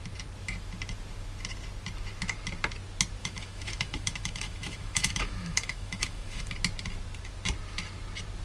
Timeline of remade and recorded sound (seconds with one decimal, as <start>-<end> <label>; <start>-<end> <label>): 0.0-3.2 recorded; 3.2-6.5 remade; 6.5-8.4 recorded